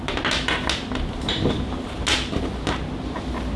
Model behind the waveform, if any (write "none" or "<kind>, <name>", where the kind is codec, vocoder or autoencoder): none